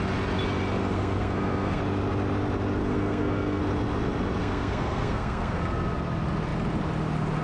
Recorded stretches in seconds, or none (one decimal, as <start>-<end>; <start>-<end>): 0.0-0.8; 1.8-2.8; 3.6-4.4; 5.6-7.4